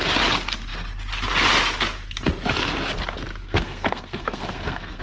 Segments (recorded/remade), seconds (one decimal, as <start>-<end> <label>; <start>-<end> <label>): 0.0-3.4 recorded; 3.4-5.0 remade